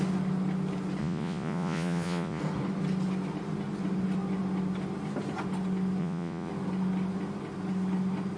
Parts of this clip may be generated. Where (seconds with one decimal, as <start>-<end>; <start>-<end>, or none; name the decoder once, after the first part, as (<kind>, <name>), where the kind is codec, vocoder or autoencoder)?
1.0-2.4 (vocoder, Vocos); 6.0-6.5